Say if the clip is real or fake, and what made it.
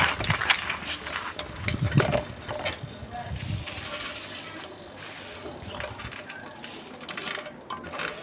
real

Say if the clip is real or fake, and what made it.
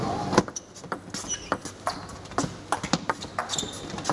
real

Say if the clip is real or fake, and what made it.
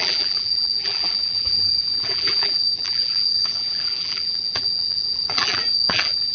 fake, vocoder, BigVGAN v2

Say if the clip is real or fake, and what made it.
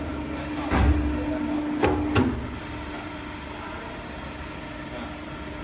real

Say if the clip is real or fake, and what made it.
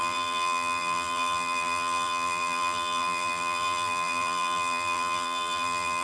fake, vocoder, BigVGAN v2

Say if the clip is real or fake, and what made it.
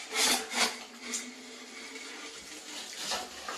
real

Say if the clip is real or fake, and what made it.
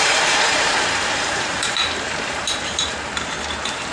fake, vocoder, BigVGAN v2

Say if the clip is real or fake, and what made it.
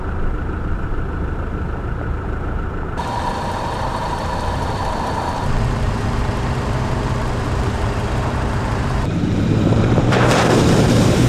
fake, vocoder, BigVGAN v2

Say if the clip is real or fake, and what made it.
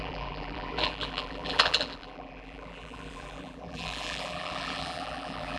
fake, vocoder, BigVGAN v2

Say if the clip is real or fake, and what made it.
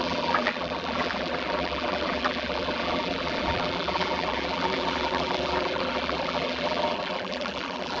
fake, vocoder, BigVGAN v2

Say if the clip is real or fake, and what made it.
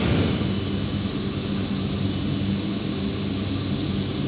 real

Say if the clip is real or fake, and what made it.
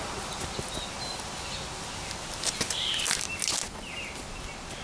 real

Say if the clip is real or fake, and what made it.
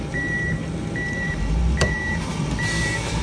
fake, vocoder, BigVGAN v2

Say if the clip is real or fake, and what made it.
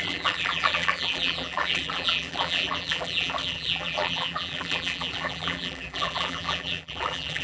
fake, vocoder, BigVGAN v2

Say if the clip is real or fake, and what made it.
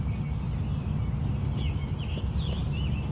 real